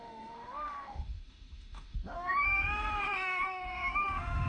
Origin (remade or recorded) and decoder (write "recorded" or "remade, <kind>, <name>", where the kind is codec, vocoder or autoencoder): remade, autoencoder, DAC-VAE